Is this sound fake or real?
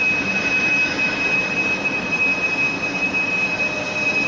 real